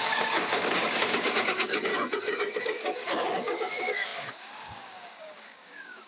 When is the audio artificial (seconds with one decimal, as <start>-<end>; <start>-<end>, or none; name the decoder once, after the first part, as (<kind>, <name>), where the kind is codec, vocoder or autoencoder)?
0.0-1.9 (codec, DAC); 2.6-6.1